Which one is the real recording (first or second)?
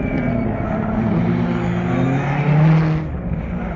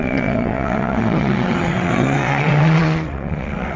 first